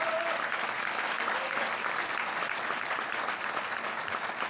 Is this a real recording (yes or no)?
yes